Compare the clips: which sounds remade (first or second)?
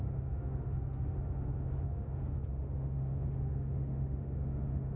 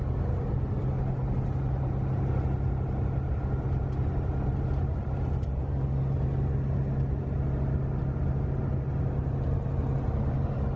first